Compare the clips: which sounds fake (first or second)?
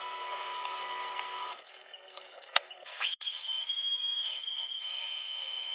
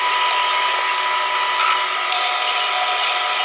first